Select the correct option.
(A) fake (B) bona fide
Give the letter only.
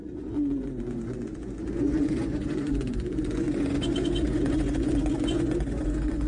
A